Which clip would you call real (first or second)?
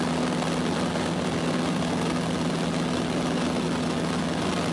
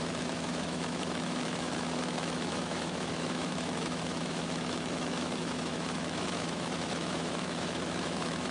first